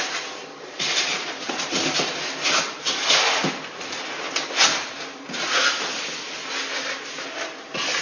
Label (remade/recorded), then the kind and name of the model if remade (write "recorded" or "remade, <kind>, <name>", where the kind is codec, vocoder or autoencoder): recorded